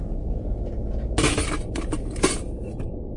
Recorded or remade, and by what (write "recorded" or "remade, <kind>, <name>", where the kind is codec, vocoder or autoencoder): recorded